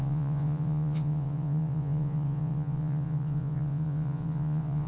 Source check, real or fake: fake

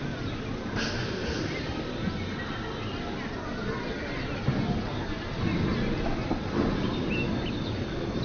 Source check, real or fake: real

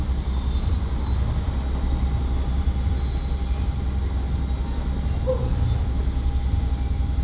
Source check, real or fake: real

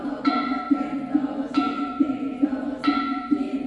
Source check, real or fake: fake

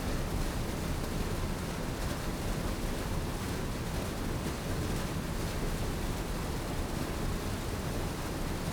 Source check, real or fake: real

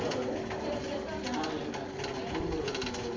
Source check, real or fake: real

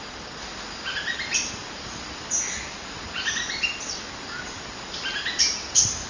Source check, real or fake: real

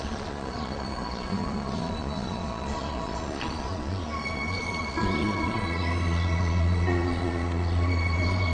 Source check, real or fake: fake